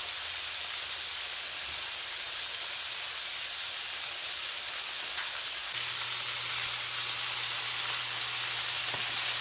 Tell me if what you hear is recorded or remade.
recorded